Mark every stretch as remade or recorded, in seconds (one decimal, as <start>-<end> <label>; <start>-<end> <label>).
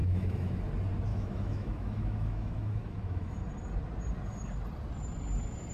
0.0-0.6 remade; 0.6-1.1 recorded; 1.1-3.4 remade; 3.4-5.7 recorded